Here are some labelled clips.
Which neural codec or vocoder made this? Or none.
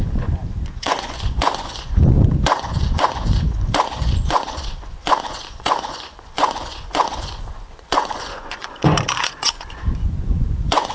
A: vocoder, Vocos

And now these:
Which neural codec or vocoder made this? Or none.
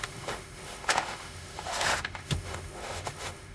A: autoencoder, DAC-VAE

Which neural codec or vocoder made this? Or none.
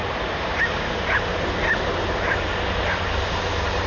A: none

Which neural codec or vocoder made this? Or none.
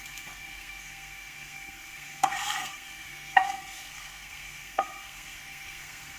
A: codec, SNAC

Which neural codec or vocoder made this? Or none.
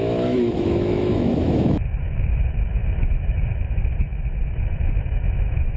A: autoencoder, DAC-VAE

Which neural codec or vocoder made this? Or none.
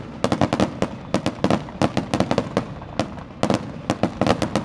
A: none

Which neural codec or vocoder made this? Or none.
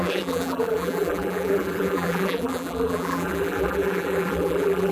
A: vocoder, BigVGAN v2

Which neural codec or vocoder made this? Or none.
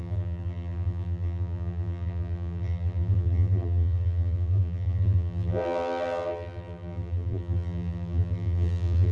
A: vocoder, BigVGAN v2